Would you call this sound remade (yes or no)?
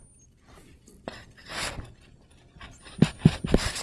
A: no